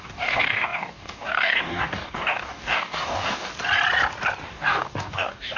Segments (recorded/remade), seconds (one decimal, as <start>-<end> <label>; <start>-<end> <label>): 0.0-3.5 remade; 3.5-4.5 recorded; 4.5-5.6 remade